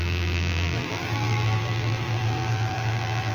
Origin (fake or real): fake